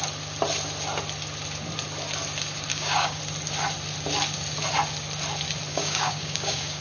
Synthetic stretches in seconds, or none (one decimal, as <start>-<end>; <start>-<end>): 2.7-3.2; 5.7-6.8